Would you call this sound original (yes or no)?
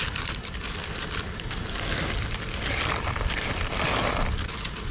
yes